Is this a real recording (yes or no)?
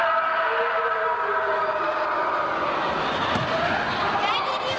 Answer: yes